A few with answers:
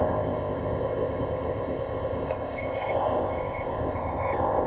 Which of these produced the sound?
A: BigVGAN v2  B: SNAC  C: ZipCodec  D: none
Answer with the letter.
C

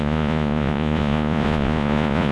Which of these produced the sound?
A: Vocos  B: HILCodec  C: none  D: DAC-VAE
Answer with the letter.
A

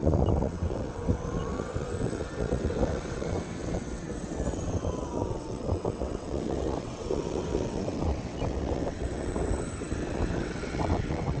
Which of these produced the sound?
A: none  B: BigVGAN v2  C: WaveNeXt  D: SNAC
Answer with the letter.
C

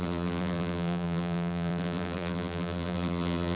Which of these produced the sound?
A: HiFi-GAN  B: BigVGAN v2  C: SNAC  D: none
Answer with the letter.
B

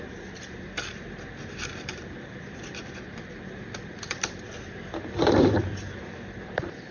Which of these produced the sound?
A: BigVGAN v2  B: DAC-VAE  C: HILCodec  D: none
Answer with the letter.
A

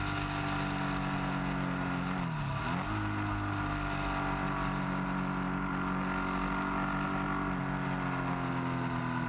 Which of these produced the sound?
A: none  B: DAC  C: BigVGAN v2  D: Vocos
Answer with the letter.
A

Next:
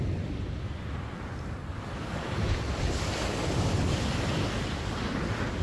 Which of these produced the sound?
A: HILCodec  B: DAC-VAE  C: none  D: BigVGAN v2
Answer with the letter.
C